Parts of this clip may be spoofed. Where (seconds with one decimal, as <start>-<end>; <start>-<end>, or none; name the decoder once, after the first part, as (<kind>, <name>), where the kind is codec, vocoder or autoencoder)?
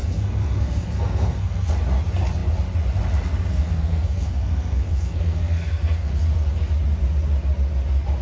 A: 0.0-1.7 (codec, SNAC); 3.5-6.1